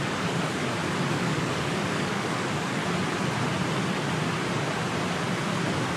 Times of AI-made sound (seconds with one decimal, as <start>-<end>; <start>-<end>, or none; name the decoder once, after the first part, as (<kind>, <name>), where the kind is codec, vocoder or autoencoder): 0.0-0.6 (codec, DAC); 1.1-2.8